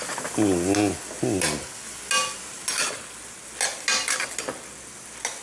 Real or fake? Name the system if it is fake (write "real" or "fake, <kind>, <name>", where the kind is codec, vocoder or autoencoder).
real